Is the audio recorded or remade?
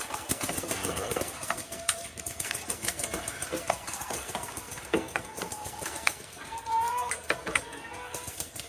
remade